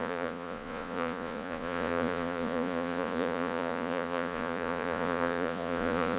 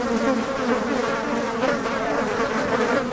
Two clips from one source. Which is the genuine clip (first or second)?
second